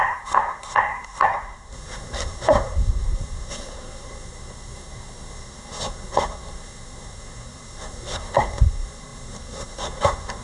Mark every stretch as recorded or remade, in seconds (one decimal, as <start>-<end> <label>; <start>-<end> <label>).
0.0-10.4 remade